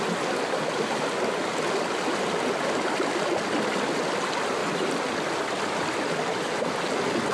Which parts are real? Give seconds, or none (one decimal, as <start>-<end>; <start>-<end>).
0.0-7.3